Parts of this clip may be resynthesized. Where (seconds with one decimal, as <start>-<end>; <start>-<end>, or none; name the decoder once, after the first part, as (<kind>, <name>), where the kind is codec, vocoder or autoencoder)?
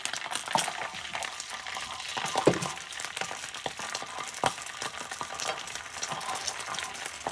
none